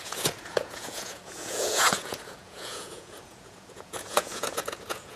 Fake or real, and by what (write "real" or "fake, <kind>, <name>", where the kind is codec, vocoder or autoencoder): fake, vocoder, Vocos